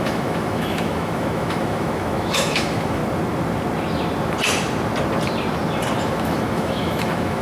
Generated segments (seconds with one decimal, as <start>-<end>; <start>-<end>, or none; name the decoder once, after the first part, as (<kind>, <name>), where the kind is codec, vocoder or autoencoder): 0.0-3.0 (autoencoder, DAC-VAE); 6.0-7.4